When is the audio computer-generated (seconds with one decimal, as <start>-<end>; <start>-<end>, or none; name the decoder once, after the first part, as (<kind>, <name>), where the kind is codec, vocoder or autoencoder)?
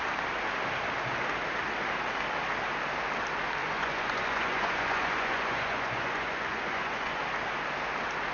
3.6-7.2 (vocoder, Vocos)